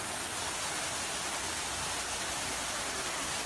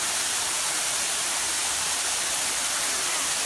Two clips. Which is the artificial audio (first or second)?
second